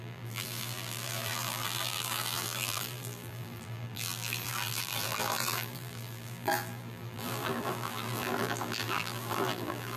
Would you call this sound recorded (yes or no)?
no